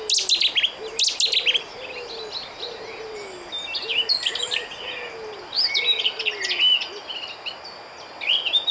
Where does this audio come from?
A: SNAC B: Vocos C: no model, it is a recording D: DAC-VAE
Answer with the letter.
C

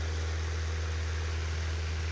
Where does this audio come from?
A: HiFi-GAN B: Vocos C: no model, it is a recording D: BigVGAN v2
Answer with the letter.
C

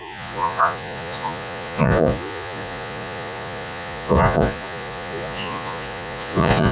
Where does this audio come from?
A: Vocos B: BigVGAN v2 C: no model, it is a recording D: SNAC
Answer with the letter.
A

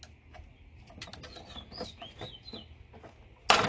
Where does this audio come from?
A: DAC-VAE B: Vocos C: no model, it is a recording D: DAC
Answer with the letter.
C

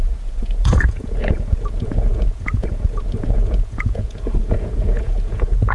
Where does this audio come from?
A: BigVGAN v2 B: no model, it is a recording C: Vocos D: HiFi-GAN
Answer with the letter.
C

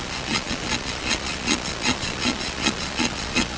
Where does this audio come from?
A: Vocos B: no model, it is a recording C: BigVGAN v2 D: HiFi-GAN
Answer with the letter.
A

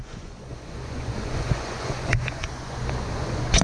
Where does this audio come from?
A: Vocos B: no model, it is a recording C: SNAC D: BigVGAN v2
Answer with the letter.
A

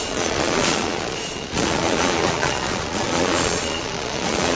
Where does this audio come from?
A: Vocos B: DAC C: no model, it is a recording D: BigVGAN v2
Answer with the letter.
A